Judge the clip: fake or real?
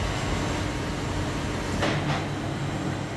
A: real